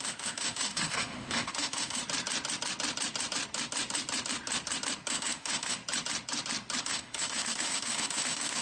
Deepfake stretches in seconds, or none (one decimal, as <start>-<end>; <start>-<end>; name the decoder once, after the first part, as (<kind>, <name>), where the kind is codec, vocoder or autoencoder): 0.0-2.0 (autoencoder, DAC-VAE); 5.1-5.8; 6.8-8.6